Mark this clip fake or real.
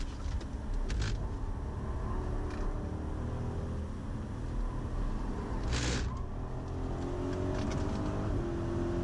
real